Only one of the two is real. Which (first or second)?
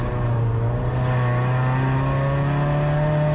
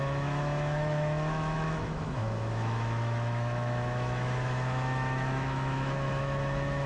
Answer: first